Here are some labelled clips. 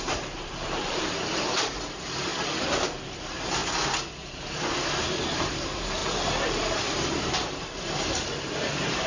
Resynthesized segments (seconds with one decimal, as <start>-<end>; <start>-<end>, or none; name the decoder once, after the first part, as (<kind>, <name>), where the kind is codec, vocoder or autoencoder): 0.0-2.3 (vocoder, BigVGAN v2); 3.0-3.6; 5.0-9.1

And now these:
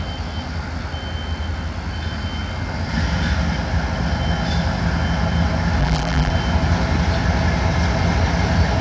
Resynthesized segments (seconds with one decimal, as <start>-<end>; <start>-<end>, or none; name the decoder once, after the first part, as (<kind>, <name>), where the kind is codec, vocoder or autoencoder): 5.8-6.3 (vocoder, BigVGAN v2)

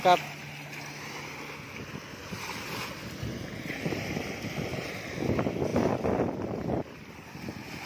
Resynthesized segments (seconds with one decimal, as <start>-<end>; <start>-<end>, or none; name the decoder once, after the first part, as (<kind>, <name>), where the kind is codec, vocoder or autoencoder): 2.2-4.7 (vocoder, BigVGAN v2)

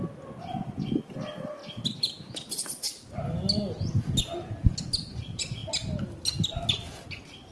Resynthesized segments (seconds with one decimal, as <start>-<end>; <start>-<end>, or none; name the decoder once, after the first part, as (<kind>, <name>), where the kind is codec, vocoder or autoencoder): none

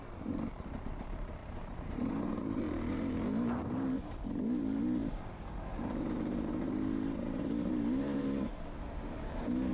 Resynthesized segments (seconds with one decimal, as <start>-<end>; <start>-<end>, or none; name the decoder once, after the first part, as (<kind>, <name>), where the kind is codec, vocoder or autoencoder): 0.0-9.7 (vocoder, BigVGAN v2)

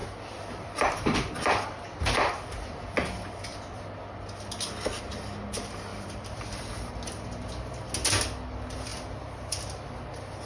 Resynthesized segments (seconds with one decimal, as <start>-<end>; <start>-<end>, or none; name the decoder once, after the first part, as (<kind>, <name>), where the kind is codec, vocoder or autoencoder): 0.0-2.5 (vocoder, BigVGAN v2); 3.5-4.2; 5.9-6.9; 8.9-9.5

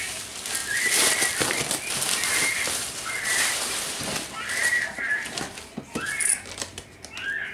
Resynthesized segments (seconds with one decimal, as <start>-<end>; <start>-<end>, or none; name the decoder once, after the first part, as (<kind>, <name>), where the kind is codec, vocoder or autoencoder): 0.6-3.7 (vocoder, BigVGAN v2); 4.6-5.4; 6.7-7.5